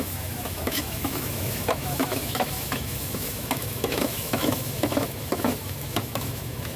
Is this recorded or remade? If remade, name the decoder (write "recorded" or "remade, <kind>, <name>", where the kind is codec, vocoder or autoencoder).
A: remade, autoencoder, DAC-VAE